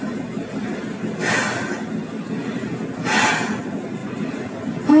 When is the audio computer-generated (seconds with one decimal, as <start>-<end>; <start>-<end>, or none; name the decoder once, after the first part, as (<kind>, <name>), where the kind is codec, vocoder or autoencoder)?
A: 4.0-4.5 (vocoder, BigVGAN v2)